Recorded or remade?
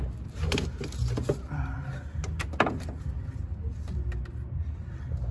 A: recorded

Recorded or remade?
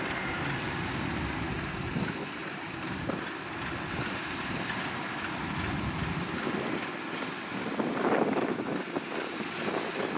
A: recorded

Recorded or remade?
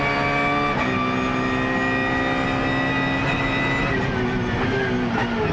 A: recorded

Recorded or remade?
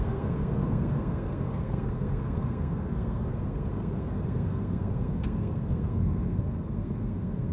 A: remade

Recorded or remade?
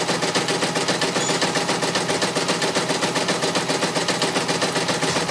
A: recorded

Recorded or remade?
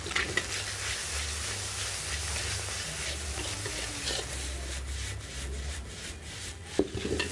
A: recorded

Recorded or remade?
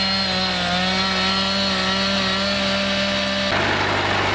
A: recorded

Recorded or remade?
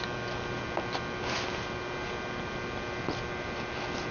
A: recorded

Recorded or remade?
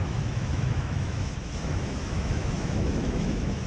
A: remade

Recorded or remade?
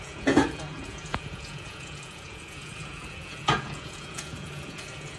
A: remade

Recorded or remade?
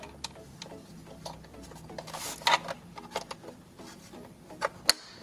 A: recorded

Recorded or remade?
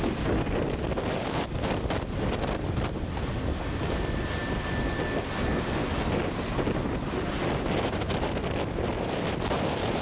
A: recorded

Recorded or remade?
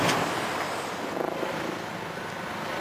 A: recorded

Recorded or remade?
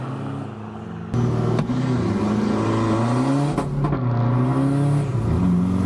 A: recorded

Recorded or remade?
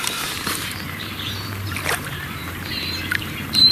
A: remade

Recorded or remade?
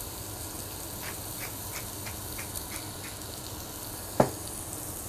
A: recorded